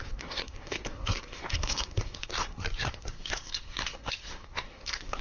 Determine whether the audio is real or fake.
fake